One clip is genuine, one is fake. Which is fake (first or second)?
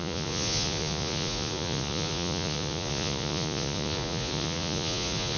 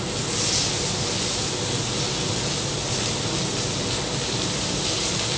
first